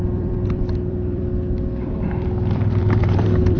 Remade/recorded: remade